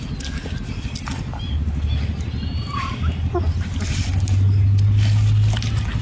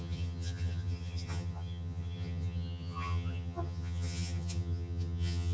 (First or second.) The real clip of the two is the first